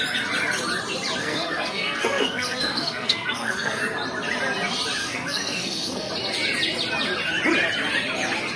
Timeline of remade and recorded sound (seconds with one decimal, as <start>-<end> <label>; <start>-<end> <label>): 0.0-1.2 recorded; 1.2-3.8 remade; 3.8-5.0 recorded; 5.0-6.1 remade; 6.1-8.6 recorded